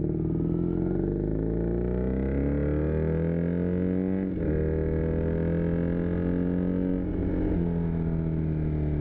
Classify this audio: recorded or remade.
recorded